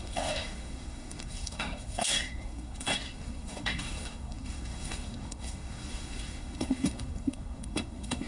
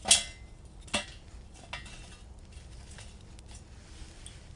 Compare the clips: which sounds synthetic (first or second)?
first